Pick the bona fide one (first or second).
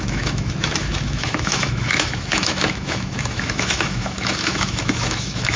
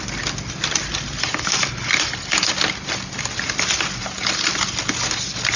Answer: second